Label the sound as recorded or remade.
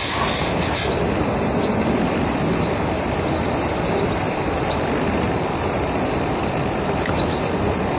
recorded